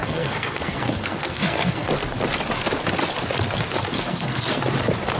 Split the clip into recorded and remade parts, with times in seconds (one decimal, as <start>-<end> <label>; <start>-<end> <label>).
0.0-1.9 remade; 1.9-3.9 recorded; 3.9-4.6 remade; 4.6-5.2 recorded